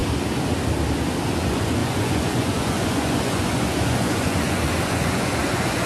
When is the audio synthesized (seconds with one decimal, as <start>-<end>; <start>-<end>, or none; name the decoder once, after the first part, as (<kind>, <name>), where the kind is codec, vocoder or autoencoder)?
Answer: 1.3-5.9 (vocoder, Vocos)